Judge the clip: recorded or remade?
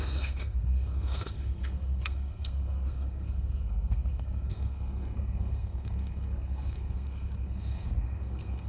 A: remade